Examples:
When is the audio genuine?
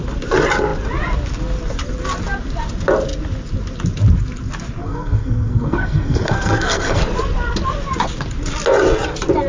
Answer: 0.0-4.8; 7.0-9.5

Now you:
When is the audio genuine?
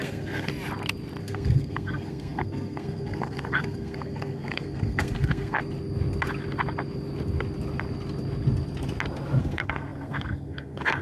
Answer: 0.5-1.2; 5.6-9.4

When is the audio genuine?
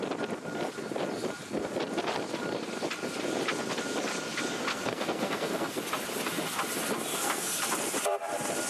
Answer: 0.0-4.7; 5.8-7.1; 7.6-8.7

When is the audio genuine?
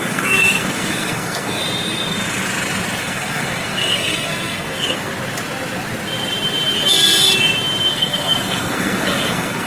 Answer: 1.6-3.0; 5.1-7.9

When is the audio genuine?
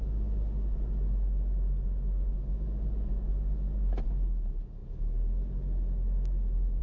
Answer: 0.0-6.8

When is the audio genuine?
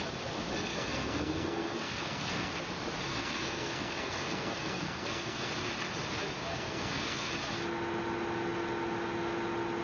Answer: 0.0-0.7; 2.6-3.1; 5.5-6.5; 7.3-9.8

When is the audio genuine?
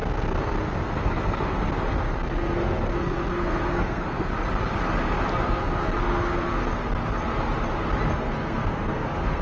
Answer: 4.3-5.3; 6.7-8.2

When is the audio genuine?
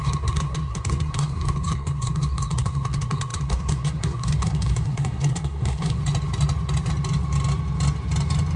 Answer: 6.0-8.6